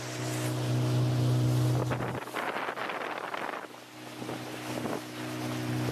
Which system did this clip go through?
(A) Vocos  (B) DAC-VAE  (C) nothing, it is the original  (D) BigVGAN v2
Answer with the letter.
C